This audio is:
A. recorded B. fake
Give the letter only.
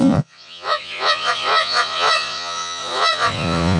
B